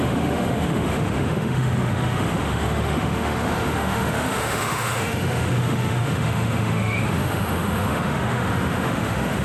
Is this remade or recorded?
remade